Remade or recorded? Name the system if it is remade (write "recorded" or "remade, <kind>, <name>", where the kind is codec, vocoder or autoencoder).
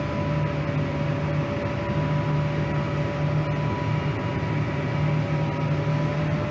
recorded